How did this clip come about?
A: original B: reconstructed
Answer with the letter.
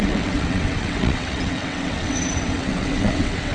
B